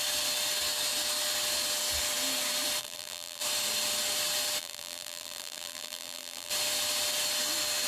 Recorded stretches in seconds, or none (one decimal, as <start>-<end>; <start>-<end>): 0.0-2.8; 3.4-4.6; 6.5-7.9